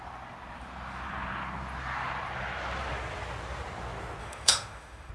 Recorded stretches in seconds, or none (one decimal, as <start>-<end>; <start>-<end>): 0.0-4.2